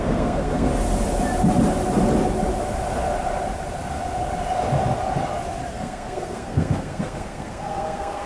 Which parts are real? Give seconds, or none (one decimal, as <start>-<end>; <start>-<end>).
0.7-5.7